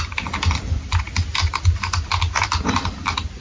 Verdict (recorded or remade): recorded